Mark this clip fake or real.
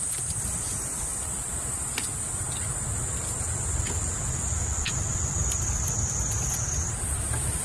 fake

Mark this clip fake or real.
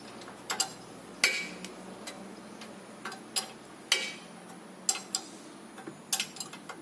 real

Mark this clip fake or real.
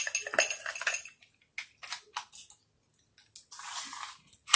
real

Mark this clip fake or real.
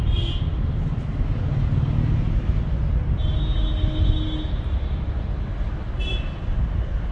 real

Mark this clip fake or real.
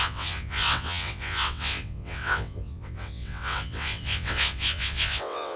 fake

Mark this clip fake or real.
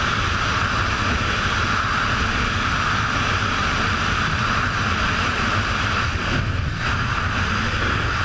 fake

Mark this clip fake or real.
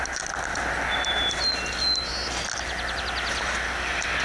real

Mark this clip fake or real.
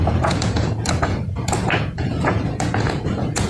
fake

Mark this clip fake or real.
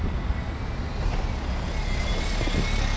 real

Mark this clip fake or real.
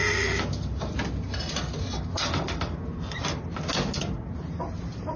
real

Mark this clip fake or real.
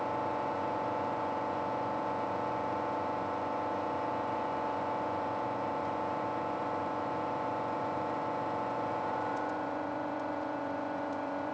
fake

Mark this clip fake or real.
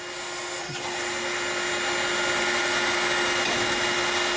real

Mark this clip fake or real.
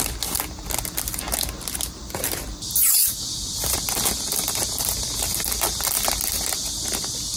real